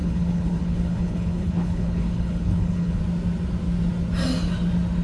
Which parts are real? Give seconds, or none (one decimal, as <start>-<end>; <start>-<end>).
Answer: 3.0-5.0